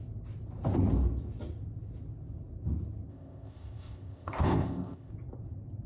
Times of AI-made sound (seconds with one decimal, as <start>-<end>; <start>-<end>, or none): 3.1-5.1